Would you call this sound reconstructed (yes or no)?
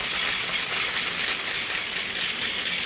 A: no